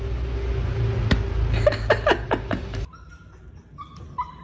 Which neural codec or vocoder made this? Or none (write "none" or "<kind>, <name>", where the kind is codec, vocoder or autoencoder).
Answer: none